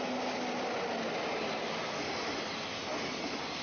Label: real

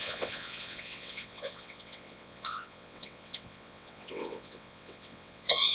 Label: fake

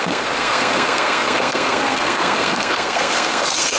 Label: fake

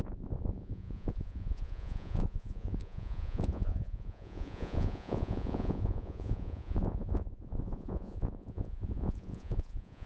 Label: fake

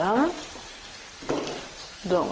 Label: real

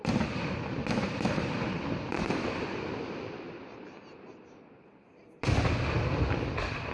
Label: real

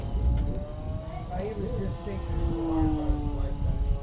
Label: real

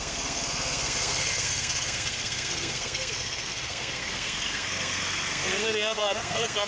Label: fake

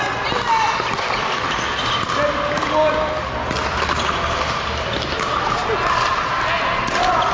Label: real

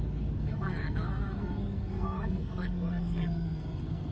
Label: fake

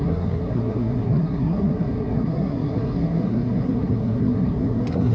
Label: fake